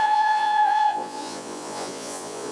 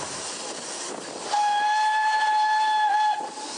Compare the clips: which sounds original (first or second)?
second